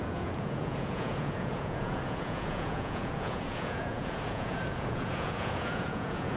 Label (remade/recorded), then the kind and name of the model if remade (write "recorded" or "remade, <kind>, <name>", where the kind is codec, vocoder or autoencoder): remade, vocoder, Vocos